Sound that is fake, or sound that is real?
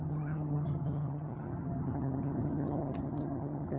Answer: fake